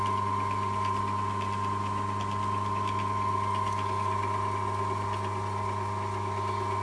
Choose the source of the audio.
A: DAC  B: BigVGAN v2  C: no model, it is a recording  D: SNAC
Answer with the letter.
C